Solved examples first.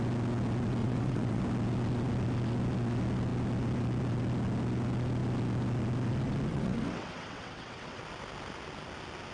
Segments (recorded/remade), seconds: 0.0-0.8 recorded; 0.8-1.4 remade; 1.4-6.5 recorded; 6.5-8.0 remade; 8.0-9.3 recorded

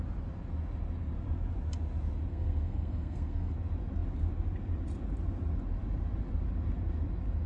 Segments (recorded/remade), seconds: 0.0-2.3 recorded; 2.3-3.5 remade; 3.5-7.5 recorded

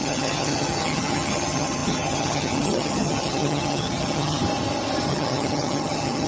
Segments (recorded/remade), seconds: 0.0-4.4 remade; 4.4-5.1 recorded; 5.1-6.3 remade

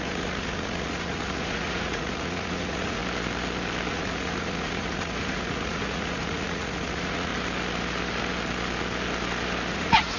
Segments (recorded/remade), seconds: 0.0-3.0 remade; 3.0-3.9 recorded; 3.9-7.3 remade; 7.3-9.7 recorded; 9.7-10.2 remade

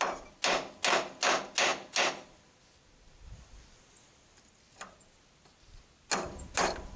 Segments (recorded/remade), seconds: 0.0-7.0 recorded